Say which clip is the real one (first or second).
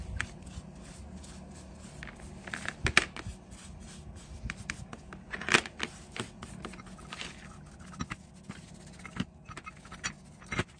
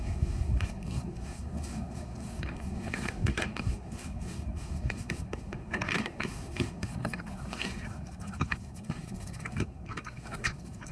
first